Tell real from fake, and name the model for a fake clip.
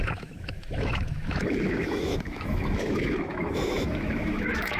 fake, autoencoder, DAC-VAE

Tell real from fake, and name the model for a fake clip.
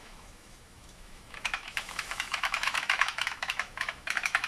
fake, autoencoder, DAC-VAE